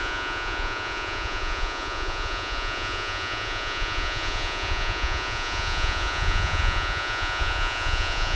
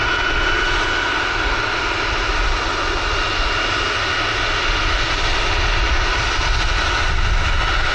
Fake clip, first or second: first